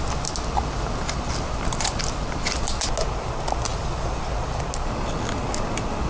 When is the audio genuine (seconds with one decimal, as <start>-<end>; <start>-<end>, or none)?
0.0-6.1